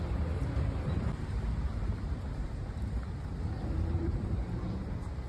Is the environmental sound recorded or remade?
remade